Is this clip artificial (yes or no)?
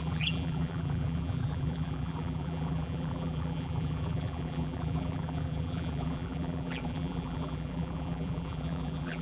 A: yes